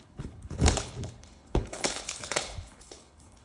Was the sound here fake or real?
fake